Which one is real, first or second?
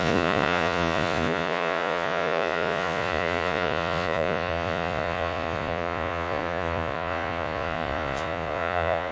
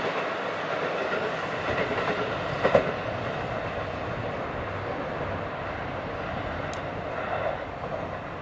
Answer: second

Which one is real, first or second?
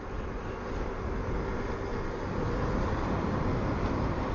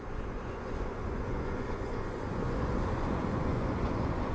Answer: first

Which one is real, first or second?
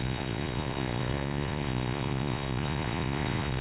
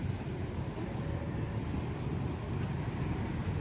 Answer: second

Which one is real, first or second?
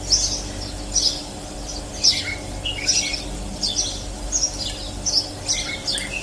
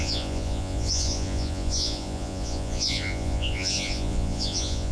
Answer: first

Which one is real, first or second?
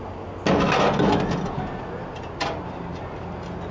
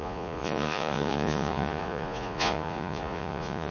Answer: first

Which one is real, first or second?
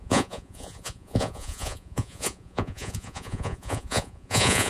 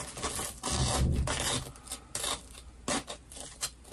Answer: second